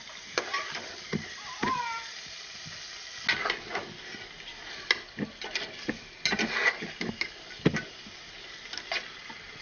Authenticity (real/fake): real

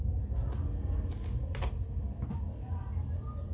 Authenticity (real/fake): real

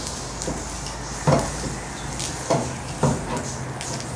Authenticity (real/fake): real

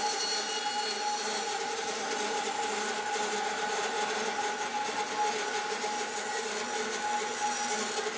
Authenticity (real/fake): real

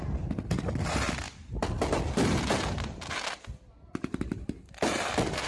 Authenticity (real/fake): real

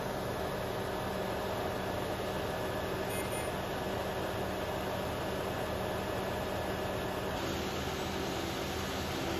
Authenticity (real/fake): real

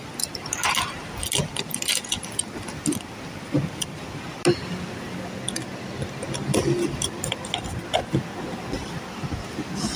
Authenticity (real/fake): real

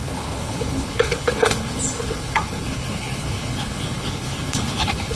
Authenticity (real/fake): fake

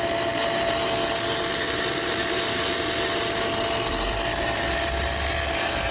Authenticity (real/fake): real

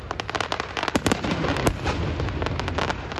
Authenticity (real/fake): real